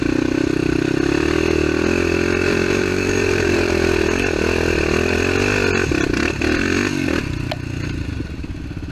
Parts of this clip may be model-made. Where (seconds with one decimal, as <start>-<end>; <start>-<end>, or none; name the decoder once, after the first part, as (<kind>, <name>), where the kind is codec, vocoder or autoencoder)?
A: 2.4-3.7 (vocoder, BigVGAN v2)

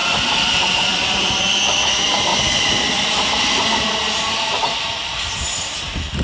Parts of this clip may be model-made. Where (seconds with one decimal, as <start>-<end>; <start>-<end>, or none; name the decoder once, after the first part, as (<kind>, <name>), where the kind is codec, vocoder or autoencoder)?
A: 0.0-0.8 (vocoder, BigVGAN v2)

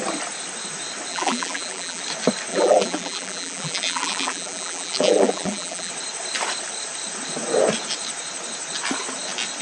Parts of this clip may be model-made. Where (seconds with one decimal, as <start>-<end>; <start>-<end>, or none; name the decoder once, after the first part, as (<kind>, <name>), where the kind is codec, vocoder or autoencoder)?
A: 1.1-2.0 (vocoder, BigVGAN v2); 2.5-5.9

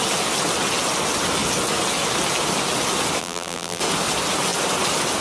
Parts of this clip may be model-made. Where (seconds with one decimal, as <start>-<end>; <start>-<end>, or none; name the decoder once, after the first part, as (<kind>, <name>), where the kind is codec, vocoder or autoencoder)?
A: 3.2-3.8 (vocoder, BigVGAN v2)

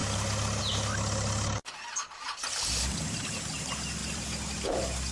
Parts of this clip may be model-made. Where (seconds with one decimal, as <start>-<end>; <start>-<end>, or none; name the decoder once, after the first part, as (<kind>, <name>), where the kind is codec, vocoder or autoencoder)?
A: 1.6-3.4 (vocoder, BigVGAN v2); 4.0-5.1

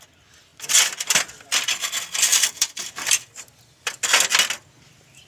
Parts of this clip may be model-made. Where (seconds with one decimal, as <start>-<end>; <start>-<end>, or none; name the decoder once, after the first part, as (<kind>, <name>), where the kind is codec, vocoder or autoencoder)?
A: 2.3-3.3 (vocoder, BigVGAN v2)

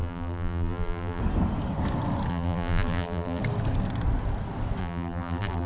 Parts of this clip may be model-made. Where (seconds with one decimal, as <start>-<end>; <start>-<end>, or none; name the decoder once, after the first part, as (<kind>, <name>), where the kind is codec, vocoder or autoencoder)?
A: 0.0-1.2 (vocoder, BigVGAN v2); 2.3-3.4; 4.8-5.7